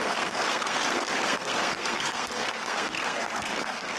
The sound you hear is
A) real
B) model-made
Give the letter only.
B